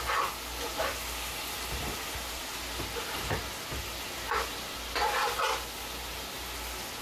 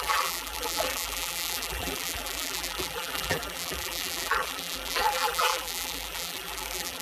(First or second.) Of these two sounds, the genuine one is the first